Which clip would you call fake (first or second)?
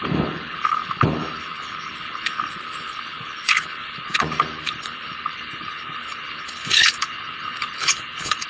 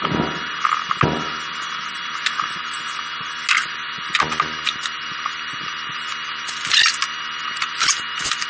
first